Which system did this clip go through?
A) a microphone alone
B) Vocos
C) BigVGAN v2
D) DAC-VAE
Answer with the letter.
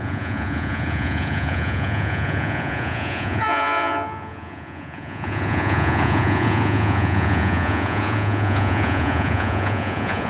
B